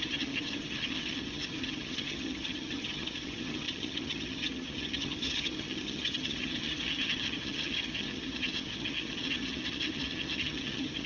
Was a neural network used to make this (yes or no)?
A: yes